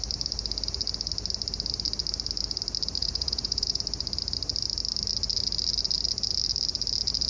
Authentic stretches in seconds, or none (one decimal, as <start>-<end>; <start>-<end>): 0.0-3.0; 3.8-7.3